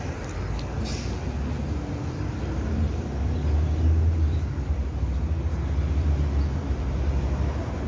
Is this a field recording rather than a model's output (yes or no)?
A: yes